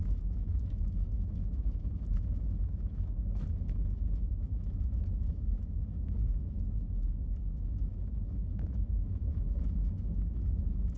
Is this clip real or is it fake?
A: fake